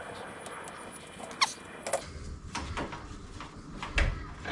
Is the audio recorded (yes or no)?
yes